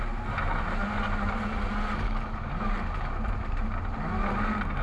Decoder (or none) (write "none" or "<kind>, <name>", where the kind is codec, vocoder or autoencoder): none